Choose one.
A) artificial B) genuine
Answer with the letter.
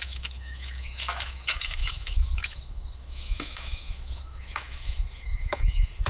A